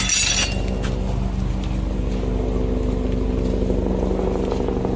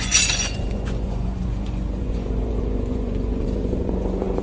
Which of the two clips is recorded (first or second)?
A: first